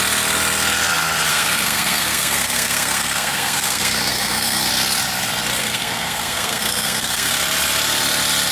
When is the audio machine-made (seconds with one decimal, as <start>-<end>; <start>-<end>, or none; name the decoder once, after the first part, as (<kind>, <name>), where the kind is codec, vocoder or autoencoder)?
1.3-4.7 (codec, SNAC); 5.6-7.3